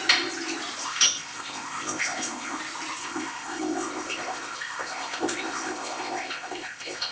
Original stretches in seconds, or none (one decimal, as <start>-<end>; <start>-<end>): 0.0-0.8; 2.6-3.0